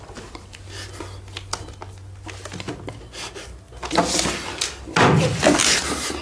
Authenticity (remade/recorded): recorded